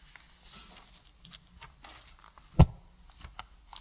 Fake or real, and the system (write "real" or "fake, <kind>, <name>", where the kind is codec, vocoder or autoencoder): real